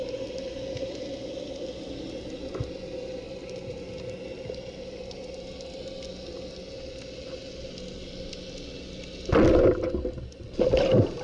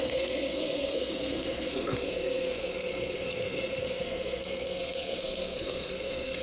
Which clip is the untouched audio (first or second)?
first